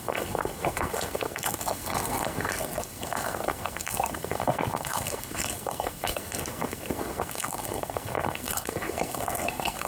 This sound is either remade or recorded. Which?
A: remade